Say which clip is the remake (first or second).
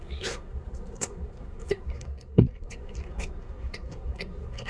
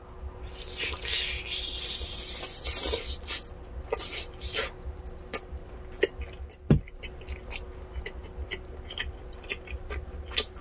first